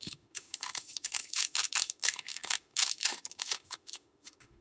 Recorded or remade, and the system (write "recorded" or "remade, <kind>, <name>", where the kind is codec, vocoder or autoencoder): remade, autoencoder, DAC-VAE